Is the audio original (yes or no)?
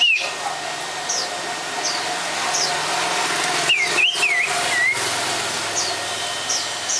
yes